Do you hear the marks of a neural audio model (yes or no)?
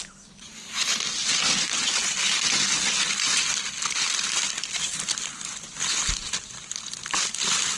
no